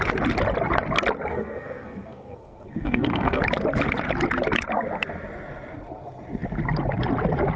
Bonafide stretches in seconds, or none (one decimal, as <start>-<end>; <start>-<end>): 0.0-1.3; 3.4-7.6